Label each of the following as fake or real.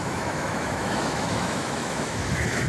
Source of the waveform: fake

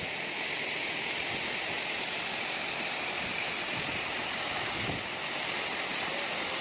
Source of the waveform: real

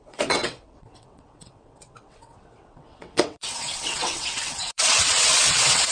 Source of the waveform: fake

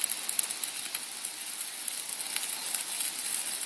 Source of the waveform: real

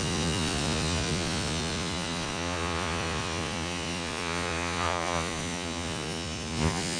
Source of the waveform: fake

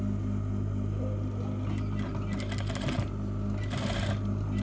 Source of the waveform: real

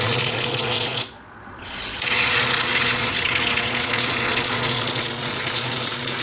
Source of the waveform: fake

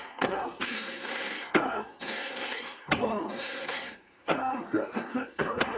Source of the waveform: fake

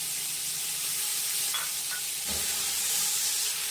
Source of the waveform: fake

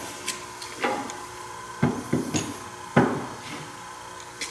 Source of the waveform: real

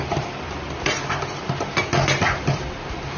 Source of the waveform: fake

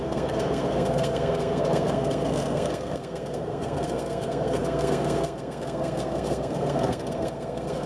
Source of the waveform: fake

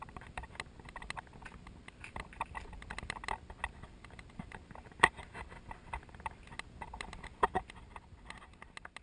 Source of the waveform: real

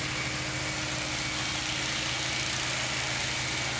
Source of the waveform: real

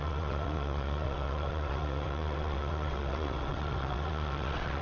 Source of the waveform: fake